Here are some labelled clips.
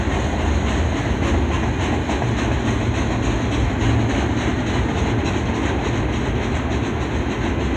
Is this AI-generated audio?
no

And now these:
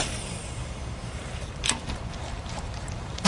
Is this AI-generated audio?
yes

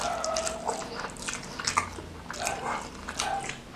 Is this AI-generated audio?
no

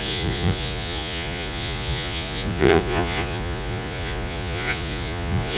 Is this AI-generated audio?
yes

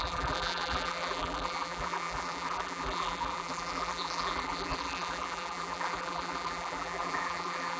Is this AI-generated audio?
yes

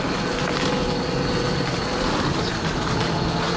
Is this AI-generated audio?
no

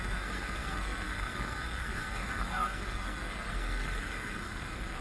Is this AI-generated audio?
yes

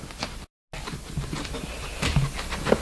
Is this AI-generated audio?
no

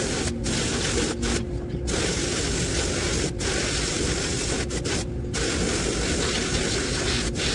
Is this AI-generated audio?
no